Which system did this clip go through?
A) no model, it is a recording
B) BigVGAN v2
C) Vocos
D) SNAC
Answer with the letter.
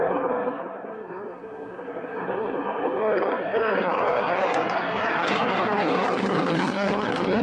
D